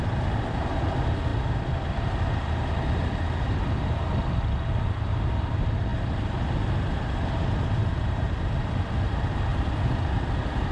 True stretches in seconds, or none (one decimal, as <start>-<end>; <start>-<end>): 0.0-9.5; 10.1-10.7